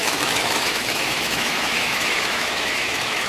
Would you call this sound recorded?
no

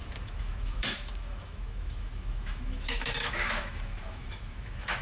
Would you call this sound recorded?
no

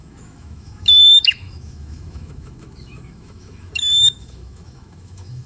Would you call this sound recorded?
no